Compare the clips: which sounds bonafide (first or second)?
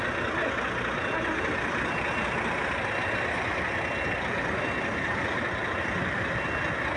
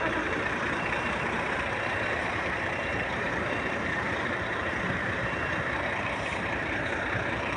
first